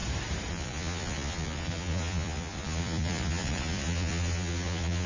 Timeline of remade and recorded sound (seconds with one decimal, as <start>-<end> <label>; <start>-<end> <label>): 0.0-0.5 recorded; 0.5-5.1 remade